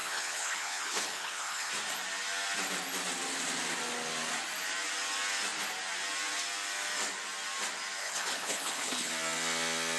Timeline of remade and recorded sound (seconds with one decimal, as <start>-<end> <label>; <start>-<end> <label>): 0.0-1.7 remade; 1.7-8.0 recorded; 8.0-9.1 remade; 9.1-10.0 recorded